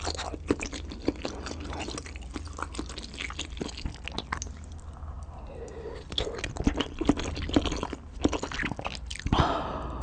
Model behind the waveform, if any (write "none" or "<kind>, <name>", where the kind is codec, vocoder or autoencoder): none